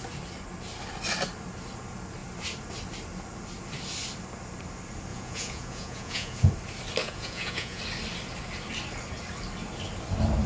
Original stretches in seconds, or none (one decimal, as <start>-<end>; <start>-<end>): 0.0-5.1; 6.5-7.0; 7.8-10.5